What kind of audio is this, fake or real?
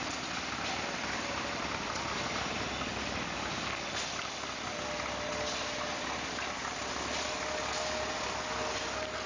real